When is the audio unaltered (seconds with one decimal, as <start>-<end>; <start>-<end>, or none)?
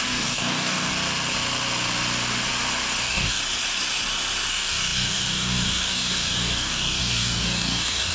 0.9-3.0; 3.4-4.5